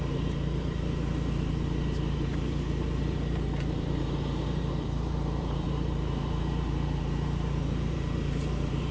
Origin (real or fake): fake